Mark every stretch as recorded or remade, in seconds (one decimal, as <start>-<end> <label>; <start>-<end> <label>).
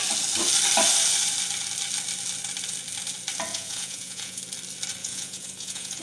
0.0-3.5 recorded; 3.5-4.4 remade; 4.4-5.0 recorded; 5.0-6.0 remade